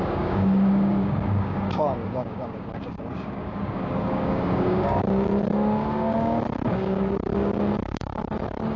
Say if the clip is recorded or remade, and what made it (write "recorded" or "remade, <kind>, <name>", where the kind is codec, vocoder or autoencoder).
remade, codec, DAC